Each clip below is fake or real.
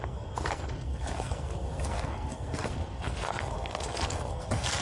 fake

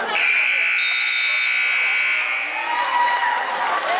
real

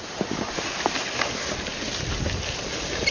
real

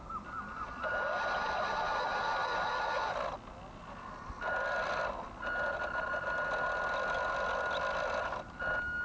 real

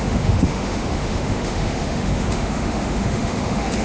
fake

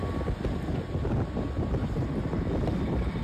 real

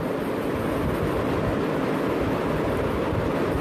real